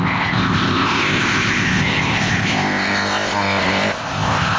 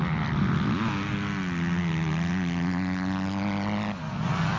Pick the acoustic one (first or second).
second